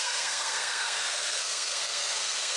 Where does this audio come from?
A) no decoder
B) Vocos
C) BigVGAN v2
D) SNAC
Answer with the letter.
D